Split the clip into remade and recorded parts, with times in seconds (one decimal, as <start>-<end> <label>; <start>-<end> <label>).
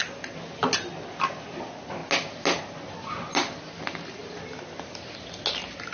0.0-5.9 recorded